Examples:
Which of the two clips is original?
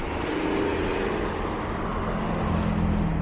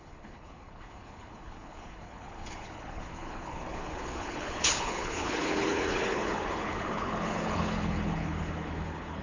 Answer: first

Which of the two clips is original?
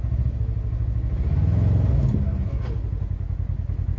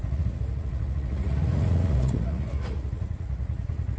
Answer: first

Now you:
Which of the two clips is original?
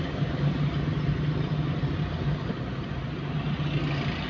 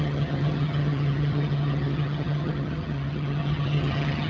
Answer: first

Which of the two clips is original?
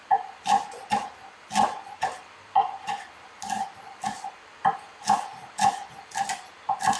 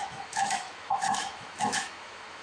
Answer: first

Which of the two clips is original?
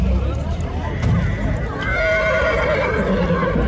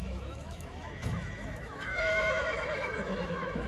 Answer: first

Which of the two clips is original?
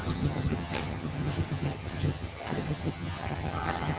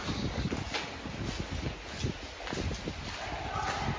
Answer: second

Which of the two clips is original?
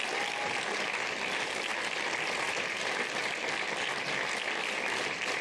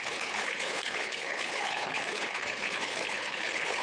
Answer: first